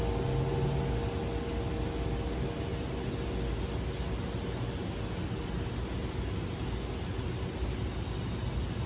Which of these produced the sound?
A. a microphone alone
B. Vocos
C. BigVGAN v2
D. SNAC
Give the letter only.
A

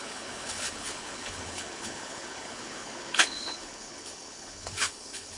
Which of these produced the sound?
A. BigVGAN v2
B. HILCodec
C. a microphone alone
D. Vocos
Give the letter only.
B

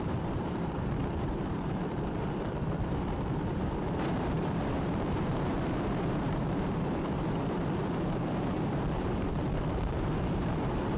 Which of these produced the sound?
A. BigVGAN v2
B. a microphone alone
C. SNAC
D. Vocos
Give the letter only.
A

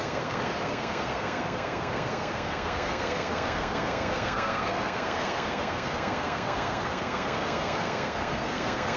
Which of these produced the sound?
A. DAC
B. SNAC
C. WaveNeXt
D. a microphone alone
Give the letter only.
B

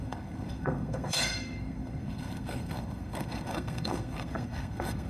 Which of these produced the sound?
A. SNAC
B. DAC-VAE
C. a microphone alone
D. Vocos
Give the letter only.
A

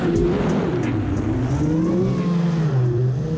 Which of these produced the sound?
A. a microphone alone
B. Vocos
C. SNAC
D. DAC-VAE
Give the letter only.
A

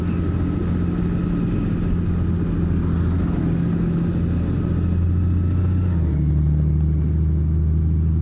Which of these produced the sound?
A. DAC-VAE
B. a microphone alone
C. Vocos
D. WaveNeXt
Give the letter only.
B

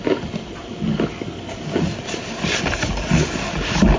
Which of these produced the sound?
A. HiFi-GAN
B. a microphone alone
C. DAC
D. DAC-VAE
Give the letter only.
B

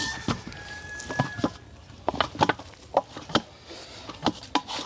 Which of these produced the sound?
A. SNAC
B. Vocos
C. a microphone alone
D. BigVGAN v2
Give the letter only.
C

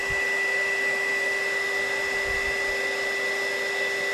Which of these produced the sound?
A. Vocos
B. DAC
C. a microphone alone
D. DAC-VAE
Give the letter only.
C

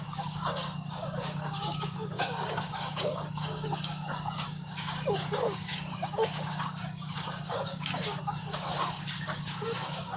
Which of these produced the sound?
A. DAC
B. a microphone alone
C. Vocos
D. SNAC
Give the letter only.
A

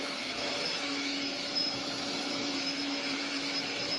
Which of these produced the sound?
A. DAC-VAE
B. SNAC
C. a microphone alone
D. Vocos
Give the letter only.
A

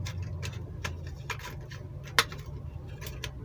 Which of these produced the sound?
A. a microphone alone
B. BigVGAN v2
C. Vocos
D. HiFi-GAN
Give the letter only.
A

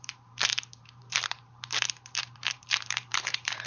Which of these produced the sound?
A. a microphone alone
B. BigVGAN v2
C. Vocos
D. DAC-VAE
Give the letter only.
B